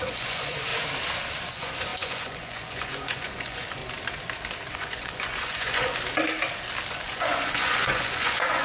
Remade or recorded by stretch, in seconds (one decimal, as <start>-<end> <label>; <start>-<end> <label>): 0.0-0.7 remade; 0.7-1.5 recorded; 1.5-3.8 remade; 3.8-4.7 recorded; 4.7-5.9 remade; 5.9-6.9 recorded; 6.9-8.6 remade